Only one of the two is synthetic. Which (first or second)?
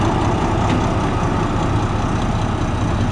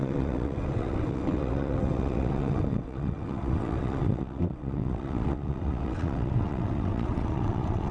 second